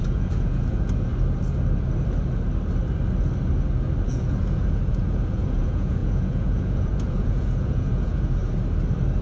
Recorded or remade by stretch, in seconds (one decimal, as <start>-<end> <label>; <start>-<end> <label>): 0.0-1.1 remade; 1.1-4.1 recorded; 4.1-8.4 remade; 8.4-9.2 recorded